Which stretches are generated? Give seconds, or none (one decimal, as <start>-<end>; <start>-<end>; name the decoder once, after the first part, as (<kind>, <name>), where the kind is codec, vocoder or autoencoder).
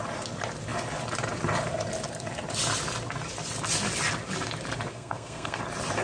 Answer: 4.9-5.6 (codec, SNAC)